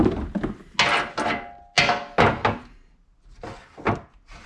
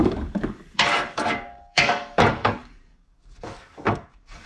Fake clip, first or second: second